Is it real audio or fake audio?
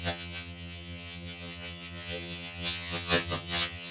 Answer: fake